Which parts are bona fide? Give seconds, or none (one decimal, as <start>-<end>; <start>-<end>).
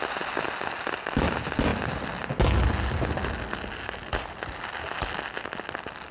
0.0-6.1